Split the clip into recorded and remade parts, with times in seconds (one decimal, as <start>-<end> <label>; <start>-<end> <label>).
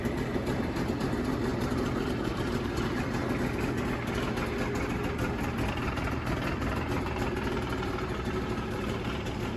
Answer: 0.0-3.2 remade; 3.2-5.7 recorded; 5.7-9.6 remade